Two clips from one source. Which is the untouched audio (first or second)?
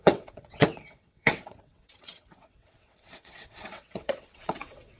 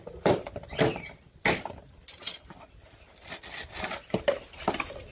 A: second